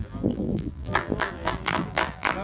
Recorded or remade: remade